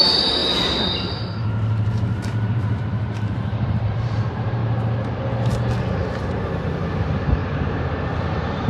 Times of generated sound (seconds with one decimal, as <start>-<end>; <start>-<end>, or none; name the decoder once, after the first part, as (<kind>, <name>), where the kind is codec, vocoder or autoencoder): 0.0-4.6 (vocoder, BigVGAN v2); 6.2-8.7